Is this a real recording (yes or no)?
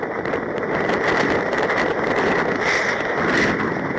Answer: yes